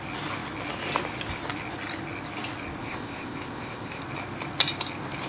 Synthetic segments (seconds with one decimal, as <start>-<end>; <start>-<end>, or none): 2.8-4.0